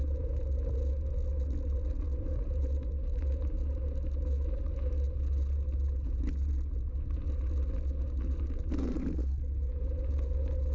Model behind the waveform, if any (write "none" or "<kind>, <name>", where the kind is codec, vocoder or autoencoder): none